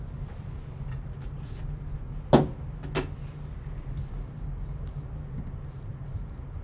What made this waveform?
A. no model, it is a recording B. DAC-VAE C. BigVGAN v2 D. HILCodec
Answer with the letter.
A